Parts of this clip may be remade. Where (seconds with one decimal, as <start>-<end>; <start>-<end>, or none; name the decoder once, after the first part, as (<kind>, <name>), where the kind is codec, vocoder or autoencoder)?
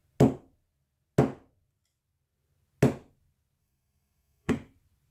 3.6-4.5 (codec, SNAC)